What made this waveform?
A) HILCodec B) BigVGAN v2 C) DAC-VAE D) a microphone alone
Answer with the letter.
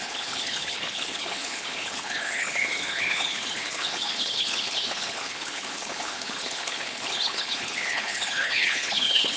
A